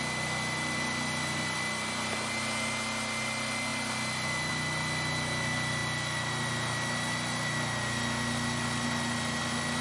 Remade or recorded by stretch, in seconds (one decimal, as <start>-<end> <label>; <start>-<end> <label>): 0.0-9.8 recorded